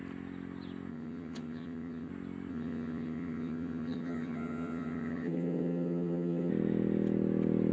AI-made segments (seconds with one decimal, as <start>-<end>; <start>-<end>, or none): 0.9-2.1; 2.5-6.5